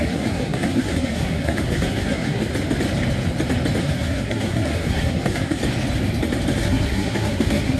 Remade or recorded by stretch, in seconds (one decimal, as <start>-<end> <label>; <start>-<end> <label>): 0.0-2.5 remade; 2.5-3.8 recorded; 3.8-5.6 remade; 5.6-6.6 recorded; 6.6-7.8 remade